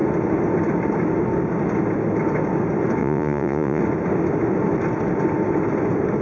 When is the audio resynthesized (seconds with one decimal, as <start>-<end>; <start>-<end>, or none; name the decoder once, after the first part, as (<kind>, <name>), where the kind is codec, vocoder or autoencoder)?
3.0-3.8 (vocoder, Vocos)